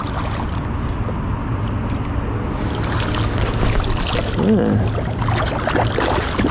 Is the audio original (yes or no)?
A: yes